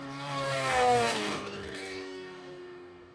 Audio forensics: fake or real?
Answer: fake